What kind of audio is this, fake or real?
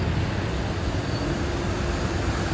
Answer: real